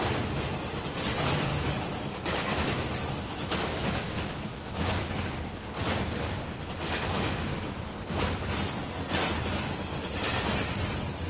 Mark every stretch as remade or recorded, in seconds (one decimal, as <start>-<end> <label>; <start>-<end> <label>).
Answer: 0.0-1.5 recorded; 1.5-5.1 remade; 5.1-11.3 recorded

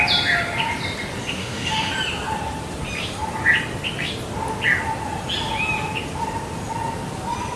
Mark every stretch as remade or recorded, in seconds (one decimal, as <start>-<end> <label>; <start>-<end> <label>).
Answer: 0.0-1.4 recorded; 1.4-1.9 remade; 1.9-7.6 recorded